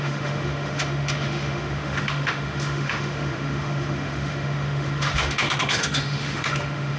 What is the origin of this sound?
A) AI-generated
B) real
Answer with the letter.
A